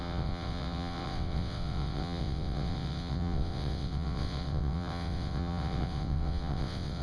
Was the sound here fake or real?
fake